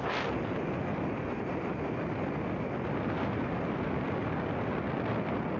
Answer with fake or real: real